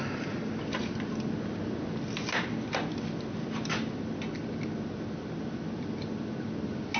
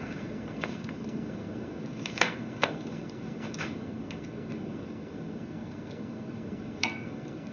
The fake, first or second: second